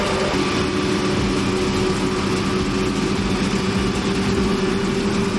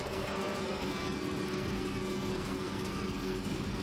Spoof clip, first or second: second